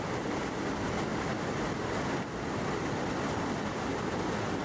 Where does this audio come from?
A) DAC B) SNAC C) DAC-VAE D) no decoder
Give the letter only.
D